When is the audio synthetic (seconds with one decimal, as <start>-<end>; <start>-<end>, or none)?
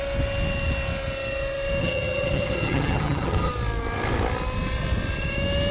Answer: 1.8-3.5